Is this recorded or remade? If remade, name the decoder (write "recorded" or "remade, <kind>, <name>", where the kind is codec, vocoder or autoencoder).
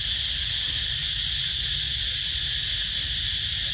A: recorded